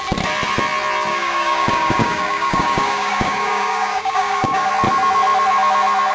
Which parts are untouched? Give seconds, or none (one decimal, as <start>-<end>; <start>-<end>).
0.0-1.1; 4.7-6.1